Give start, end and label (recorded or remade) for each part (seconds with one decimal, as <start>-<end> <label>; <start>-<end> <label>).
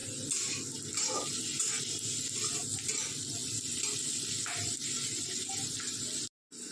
0.0-6.7 recorded